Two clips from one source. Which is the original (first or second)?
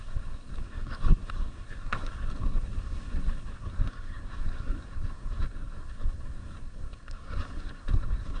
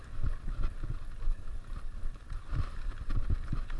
second